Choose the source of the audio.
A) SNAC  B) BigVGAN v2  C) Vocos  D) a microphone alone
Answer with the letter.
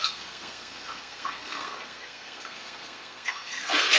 A